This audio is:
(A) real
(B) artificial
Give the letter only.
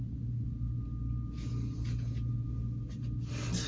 A